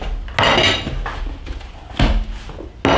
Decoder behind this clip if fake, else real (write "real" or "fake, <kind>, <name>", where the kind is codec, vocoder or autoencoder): real